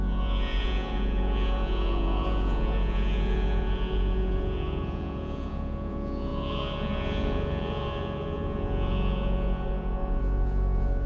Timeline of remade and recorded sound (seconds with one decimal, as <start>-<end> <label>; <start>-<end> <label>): 0.0-11.1 remade